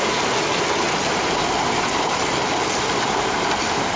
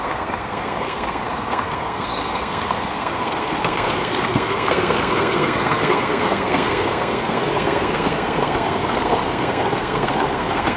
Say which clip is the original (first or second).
first